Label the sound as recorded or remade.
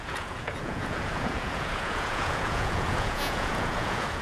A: remade